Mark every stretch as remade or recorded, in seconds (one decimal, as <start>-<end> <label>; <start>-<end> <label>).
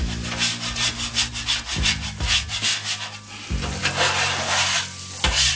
0.0-5.6 recorded